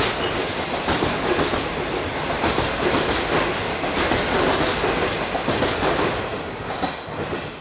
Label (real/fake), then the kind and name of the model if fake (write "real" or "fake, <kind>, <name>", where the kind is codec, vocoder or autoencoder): real